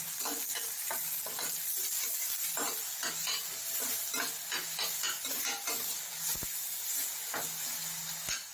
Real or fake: real